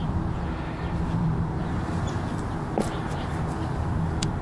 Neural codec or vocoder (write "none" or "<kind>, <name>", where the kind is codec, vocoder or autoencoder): none